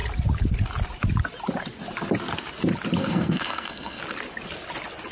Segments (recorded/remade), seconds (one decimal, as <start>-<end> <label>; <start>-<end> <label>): 0.0-3.0 recorded; 3.0-4.0 remade; 4.0-5.1 recorded